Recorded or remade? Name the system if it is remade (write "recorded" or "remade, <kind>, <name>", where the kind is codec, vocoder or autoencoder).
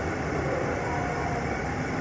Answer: recorded